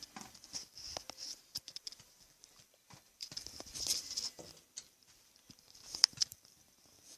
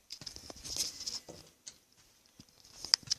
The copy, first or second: first